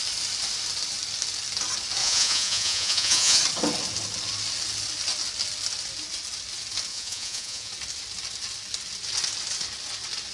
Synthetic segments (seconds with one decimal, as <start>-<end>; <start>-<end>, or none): 2.0-3.4; 6.9-7.7